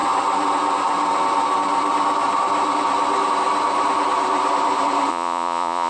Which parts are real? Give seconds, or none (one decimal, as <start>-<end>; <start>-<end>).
0.0-5.1